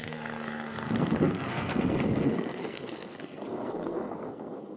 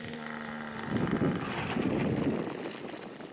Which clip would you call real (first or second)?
second